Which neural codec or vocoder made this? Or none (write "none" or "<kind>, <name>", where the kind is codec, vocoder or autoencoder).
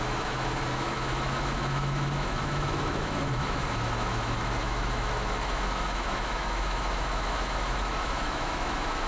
autoencoder, DAC-VAE